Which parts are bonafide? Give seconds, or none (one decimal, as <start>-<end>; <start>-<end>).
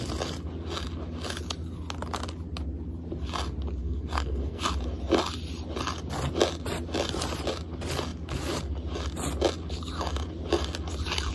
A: 0.0-3.8; 4.6-11.3